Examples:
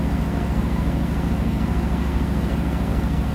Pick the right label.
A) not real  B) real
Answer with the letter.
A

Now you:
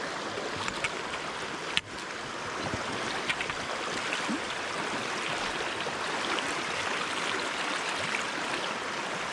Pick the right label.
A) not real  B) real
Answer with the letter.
B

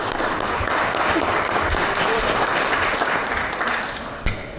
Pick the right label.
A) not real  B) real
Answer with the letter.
B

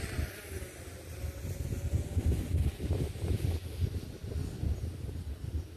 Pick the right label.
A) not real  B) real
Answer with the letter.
B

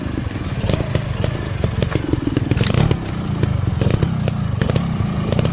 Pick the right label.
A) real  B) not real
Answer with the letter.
A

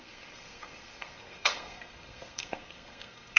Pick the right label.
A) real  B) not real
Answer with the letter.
B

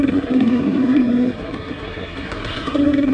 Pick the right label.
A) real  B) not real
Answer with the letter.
B